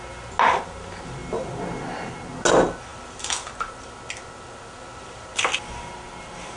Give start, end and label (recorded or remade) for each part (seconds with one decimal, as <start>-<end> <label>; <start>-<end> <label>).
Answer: 0.0-6.6 recorded